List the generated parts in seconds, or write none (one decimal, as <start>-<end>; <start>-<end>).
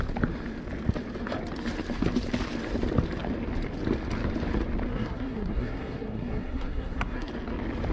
4.9-7.3